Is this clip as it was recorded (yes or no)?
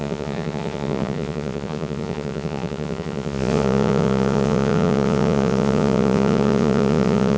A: no